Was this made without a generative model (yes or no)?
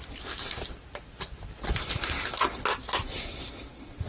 yes